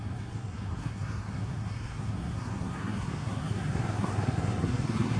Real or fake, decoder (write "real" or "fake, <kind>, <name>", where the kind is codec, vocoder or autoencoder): fake, codec, SNAC